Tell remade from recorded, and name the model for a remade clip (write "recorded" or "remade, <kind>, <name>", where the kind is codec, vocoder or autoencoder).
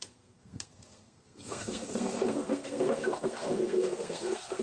remade, codec, SNAC